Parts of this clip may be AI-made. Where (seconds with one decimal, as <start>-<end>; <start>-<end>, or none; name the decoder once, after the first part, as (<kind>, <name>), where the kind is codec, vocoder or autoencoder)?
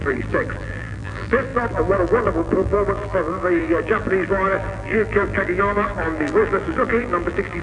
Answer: 0.0-7.6 (vocoder, BigVGAN v2)